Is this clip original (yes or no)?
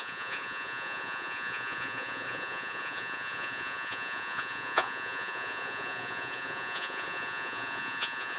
no